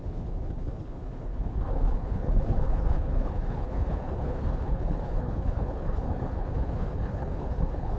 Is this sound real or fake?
fake